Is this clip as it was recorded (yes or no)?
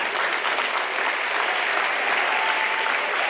yes